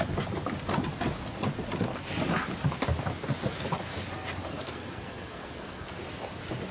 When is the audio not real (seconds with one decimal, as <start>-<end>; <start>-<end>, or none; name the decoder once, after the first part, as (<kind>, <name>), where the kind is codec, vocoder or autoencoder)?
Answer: 4.5-5.9 (codec, SNAC)